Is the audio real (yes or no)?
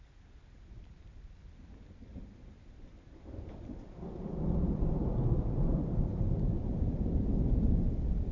yes